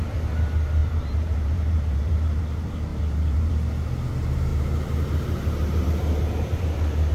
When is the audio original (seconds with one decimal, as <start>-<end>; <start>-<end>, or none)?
0.0-0.8; 2.4-2.9; 3.5-4.5; 5.8-7.1